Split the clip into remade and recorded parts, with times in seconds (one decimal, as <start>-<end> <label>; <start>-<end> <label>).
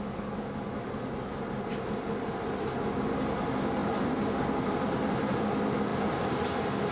0.0-6.9 recorded